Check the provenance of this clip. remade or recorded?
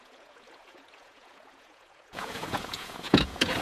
remade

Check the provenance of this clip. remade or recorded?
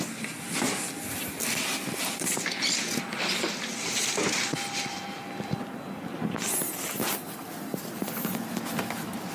recorded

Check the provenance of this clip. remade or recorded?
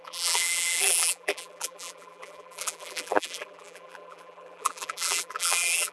remade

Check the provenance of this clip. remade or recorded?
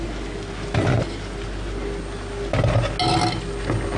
recorded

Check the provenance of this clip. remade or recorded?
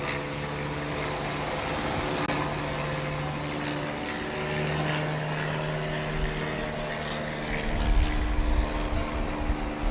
recorded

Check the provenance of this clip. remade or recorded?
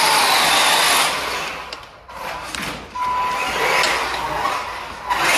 recorded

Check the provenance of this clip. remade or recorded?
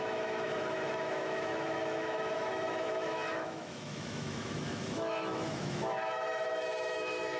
remade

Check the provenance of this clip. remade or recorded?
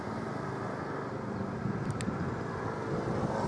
recorded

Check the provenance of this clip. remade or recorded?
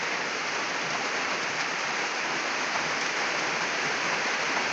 remade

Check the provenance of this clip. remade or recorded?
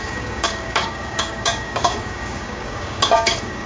remade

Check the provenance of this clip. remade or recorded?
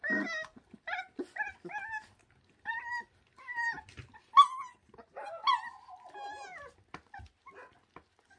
recorded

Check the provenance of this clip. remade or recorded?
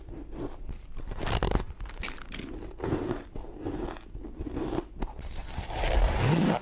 recorded